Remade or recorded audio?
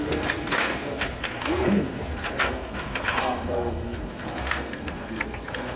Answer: remade